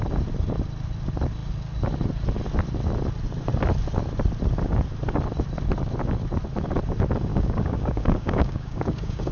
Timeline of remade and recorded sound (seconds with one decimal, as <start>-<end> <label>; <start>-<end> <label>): 0.0-7.3 recorded; 7.3-9.3 remade